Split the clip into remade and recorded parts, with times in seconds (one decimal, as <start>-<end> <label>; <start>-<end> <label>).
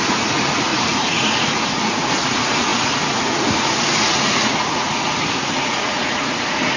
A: 0.0-6.8 remade